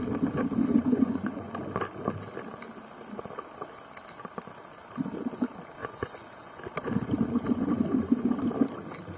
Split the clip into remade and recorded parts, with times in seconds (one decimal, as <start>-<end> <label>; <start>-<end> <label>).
0.0-0.7 recorded; 0.7-1.5 remade; 1.5-5.8 recorded; 5.8-6.6 remade; 6.6-9.2 recorded